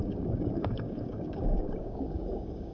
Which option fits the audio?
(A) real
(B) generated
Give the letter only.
B